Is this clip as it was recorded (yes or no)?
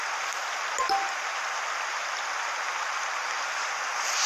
yes